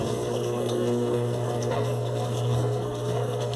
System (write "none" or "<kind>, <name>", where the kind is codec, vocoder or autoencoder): codec, SNAC